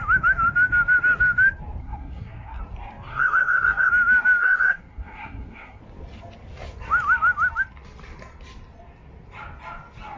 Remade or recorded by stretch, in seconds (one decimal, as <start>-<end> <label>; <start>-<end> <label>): 0.0-1.8 recorded; 1.8-2.6 remade; 2.6-3.1 recorded; 3.1-3.9 remade; 3.9-4.4 recorded; 4.4-5.8 remade; 5.8-10.2 recorded